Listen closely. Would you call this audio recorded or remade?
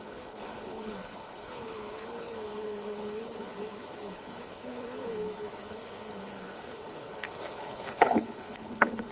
remade